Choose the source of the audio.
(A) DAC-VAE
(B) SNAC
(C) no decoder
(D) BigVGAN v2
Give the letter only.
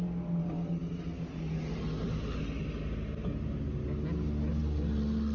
C